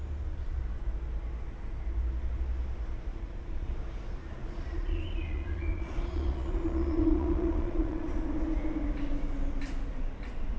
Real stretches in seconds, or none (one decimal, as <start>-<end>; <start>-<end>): 0.0-3.1; 3.7-4.2; 8.2-10.6